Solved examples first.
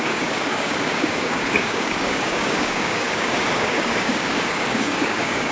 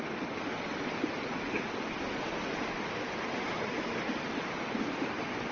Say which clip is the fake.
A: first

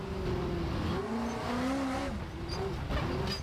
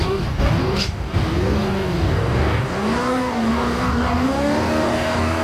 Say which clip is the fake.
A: second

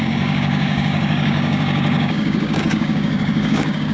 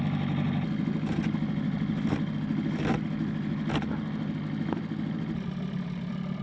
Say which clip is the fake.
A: first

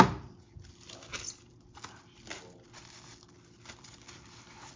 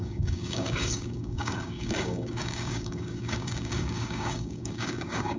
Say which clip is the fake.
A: second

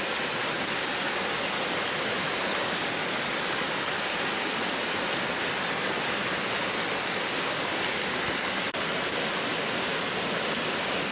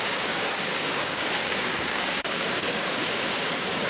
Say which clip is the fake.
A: second